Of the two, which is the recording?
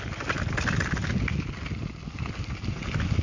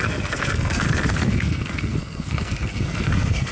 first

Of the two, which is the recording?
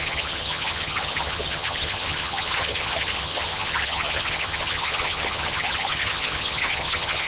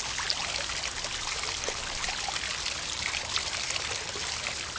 second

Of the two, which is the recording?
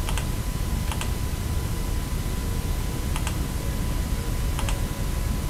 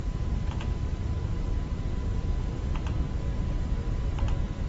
first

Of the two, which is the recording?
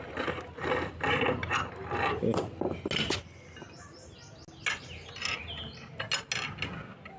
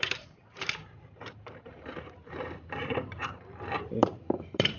first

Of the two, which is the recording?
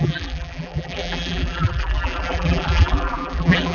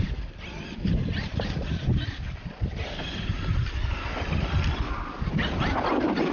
second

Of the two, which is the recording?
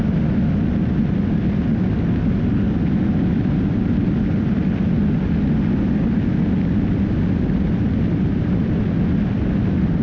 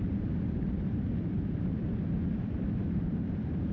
first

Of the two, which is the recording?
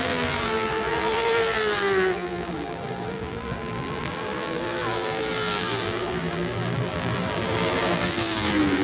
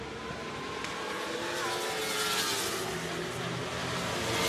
second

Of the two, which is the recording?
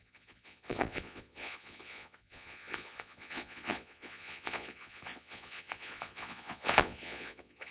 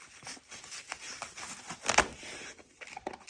second